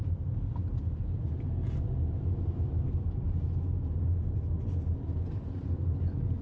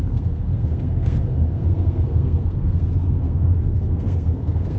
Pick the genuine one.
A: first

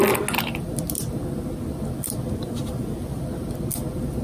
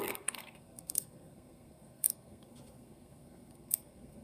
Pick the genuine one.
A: first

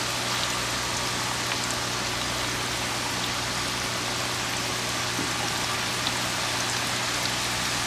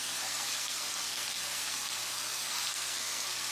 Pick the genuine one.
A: first